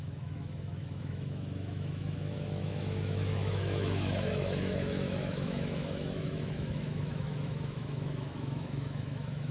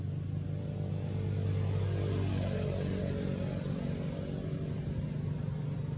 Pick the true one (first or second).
second